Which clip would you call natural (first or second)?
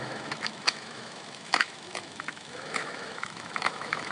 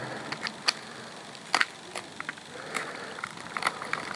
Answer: second